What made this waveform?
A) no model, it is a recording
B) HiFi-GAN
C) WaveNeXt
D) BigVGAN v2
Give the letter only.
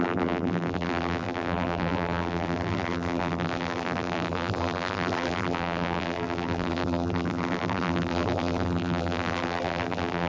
D